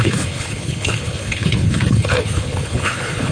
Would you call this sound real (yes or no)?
no